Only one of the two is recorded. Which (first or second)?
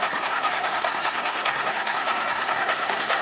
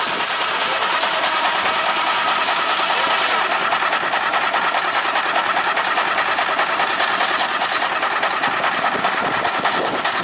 second